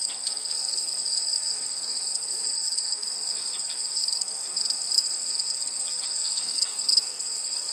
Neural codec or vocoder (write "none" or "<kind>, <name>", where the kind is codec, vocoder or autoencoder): codec, SNAC